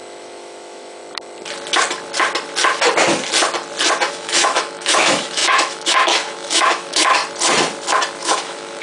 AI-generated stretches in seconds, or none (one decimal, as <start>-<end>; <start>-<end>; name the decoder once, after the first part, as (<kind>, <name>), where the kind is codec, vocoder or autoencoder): 0.0-1.0 (autoencoder, DAC-VAE); 4.1-7.2; 8.2-8.8